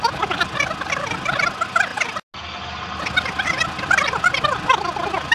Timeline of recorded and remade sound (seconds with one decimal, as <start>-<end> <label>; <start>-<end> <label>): 0.0-5.3 recorded